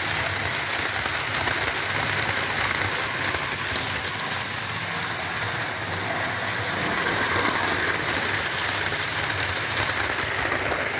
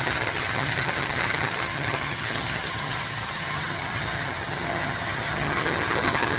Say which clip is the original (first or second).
first